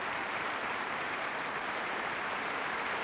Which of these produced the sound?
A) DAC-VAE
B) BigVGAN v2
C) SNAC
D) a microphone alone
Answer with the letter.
B